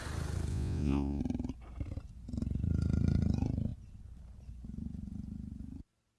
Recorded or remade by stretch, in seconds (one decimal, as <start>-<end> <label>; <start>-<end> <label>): 0.0-0.5 recorded; 0.5-1.2 remade; 1.2-6.2 recorded